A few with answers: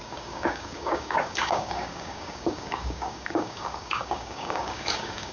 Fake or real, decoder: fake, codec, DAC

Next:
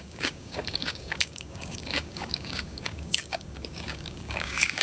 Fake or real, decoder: fake, codec, DAC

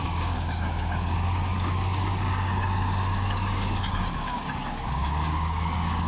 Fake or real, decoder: fake, codec, DAC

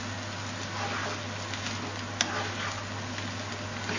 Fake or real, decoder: real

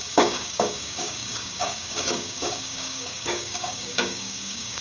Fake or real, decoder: fake, codec, DAC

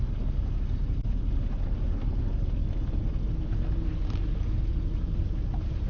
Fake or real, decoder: real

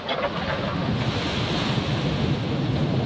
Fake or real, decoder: real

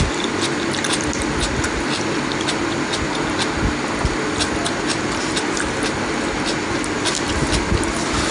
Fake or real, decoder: real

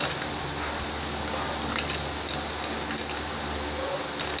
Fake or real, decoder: real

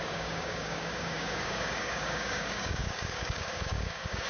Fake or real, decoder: fake, codec, DAC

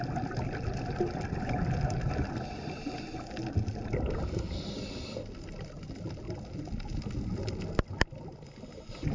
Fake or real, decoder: real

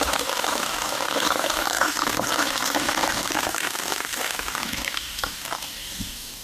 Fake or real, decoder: fake, codec, DAC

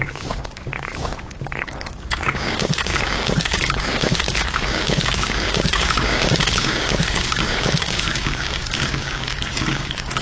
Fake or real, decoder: fake, codec, DAC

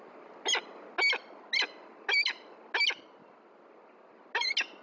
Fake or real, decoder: real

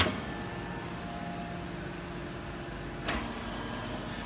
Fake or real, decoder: real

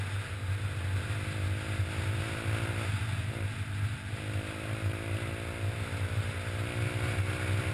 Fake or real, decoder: real